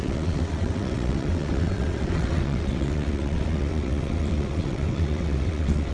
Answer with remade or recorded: remade